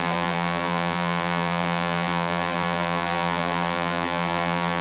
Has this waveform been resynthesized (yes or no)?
yes